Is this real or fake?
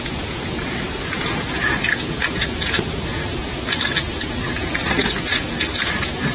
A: fake